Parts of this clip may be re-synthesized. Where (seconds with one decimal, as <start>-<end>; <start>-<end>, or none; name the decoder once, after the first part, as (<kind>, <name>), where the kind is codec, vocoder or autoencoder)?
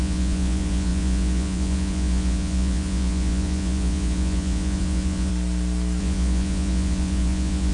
0.0-5.3 (vocoder, Vocos); 6.0-7.7